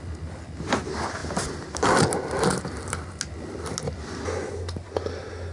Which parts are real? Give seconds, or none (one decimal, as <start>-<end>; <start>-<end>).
0.0-5.5